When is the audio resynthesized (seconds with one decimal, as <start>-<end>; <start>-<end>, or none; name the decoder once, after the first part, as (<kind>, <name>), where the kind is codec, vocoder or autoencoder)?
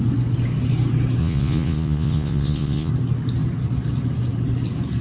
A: 1.2-2.9 (vocoder, Vocos)